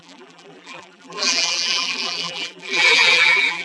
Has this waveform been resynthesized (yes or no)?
yes